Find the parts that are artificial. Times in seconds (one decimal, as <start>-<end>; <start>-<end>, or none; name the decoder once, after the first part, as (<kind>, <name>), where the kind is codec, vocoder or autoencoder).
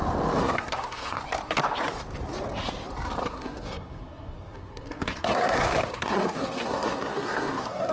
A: 0.4-1.2 (codec, SNAC); 3.2-7.9